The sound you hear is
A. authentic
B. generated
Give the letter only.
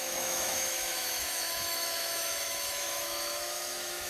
B